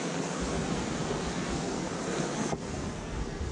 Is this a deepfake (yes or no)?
yes